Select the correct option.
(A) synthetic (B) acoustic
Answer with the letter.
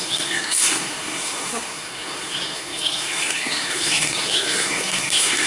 A